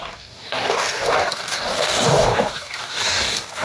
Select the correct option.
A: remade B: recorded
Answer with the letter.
A